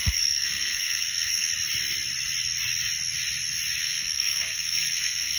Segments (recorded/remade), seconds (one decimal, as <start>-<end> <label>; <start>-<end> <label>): 0.0-1.5 remade; 1.5-3.8 recorded; 3.8-5.4 remade